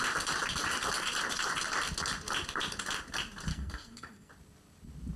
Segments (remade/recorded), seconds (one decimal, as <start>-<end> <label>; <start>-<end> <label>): 0.0-3.5 recorded; 3.5-4.3 remade; 4.3-5.2 recorded